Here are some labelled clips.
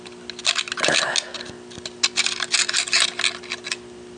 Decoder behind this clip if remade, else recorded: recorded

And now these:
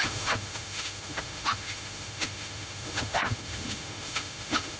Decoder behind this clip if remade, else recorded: remade, autoencoder, DAC-VAE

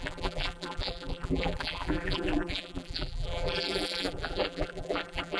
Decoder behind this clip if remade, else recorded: remade, vocoder, BigVGAN v2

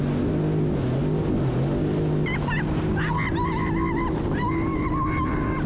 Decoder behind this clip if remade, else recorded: recorded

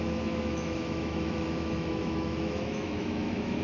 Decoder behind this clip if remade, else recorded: remade, autoencoder, DAC-VAE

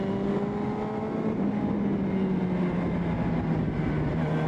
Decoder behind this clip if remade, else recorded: recorded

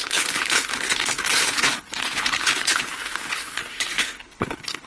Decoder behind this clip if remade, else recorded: remade, codec, HILCodec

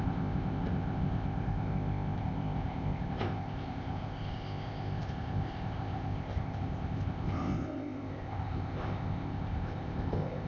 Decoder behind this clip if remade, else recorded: remade, codec, ZipCodec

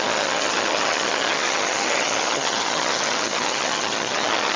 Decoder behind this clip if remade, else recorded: remade, vocoder, HiFi-GAN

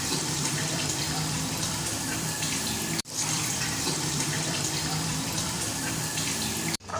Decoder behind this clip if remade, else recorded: remade, vocoder, BigVGAN v2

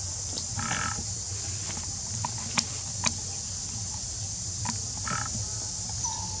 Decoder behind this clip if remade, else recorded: recorded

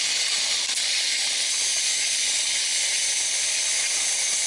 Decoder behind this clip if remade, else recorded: recorded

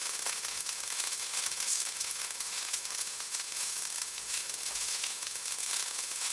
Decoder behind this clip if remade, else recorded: remade, autoencoder, DAC-VAE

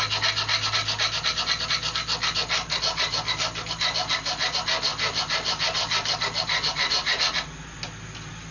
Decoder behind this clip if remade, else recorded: recorded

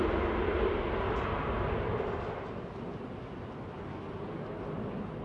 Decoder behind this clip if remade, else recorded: recorded